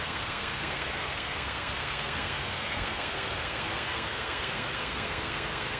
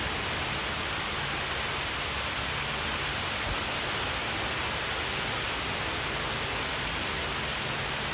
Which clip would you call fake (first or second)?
first